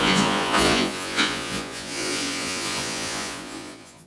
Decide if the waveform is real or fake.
fake